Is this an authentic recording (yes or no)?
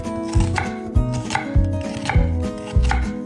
yes